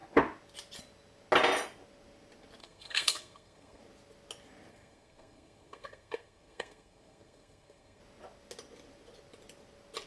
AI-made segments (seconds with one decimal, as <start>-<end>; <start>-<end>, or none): 2.6-3.8; 4.7-8.0